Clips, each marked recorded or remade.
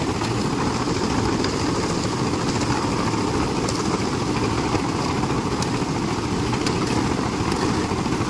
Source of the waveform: recorded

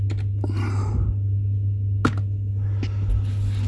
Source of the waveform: recorded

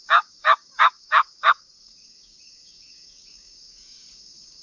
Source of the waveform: remade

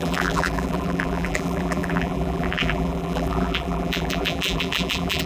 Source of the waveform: remade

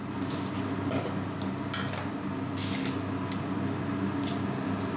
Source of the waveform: recorded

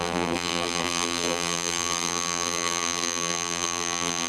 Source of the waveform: remade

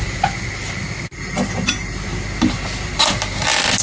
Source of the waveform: recorded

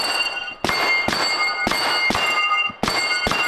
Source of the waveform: recorded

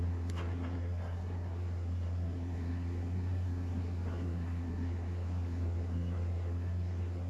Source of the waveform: remade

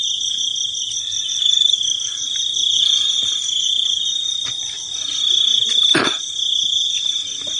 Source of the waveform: recorded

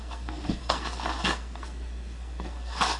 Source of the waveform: remade